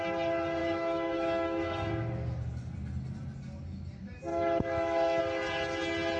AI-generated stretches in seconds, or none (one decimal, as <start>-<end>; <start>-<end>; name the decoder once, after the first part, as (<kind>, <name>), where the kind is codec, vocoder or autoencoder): 0.6-1.9 (autoencoder, DAC-VAE); 4.3-5.2